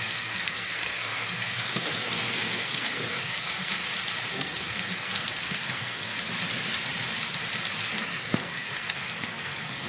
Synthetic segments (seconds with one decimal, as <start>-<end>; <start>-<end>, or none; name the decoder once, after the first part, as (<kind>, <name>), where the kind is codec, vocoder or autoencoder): 0.0-3.8 (codec, SNAC); 4.3-6.1; 7.8-9.9